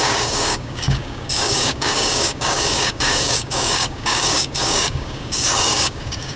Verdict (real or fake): fake